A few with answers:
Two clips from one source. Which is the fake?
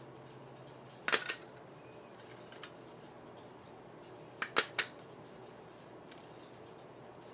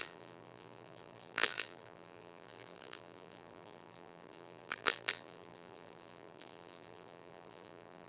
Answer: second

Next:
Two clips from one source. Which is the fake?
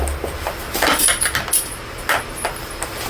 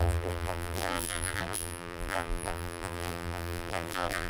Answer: second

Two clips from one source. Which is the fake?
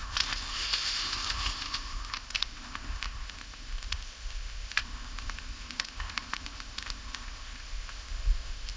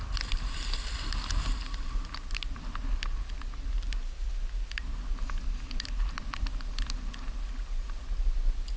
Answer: first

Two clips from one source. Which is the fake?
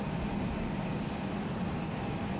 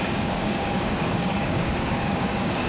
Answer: second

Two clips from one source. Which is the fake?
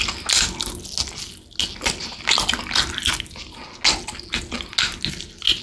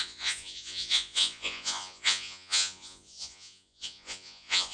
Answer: second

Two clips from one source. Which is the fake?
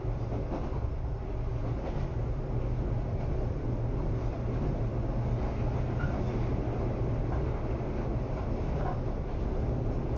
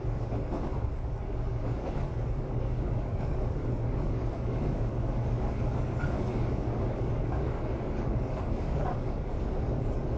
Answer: second